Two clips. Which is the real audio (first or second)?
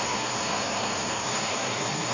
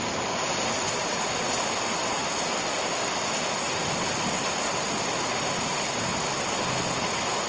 second